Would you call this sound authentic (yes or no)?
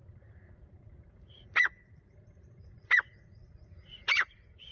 no